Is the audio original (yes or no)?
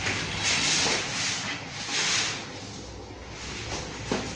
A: yes